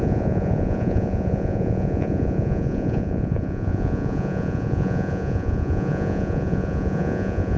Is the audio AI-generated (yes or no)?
yes